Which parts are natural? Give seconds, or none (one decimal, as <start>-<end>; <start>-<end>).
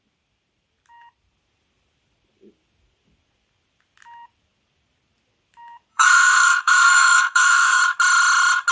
0.0-5.9; 7.8-8.7